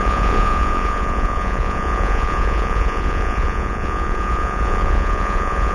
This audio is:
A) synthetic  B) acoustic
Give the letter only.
A